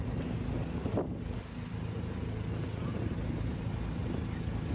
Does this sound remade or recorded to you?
recorded